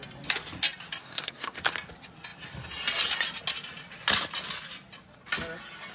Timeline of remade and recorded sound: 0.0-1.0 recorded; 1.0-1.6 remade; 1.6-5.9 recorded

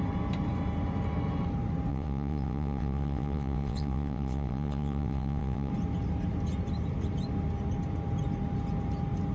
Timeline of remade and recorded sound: 0.0-1.9 recorded; 1.9-5.7 remade; 5.7-9.3 recorded

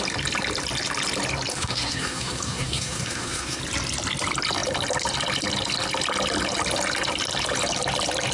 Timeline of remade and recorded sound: 0.0-1.5 recorded; 1.5-3.6 remade; 3.6-8.3 recorded

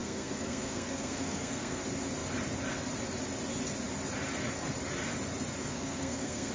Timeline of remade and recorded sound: 0.0-1.8 remade; 1.8-5.7 recorded; 5.7-6.5 remade

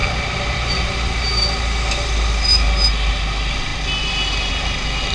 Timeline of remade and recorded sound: 0.0-5.1 recorded